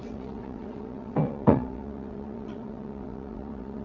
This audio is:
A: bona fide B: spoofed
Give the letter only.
B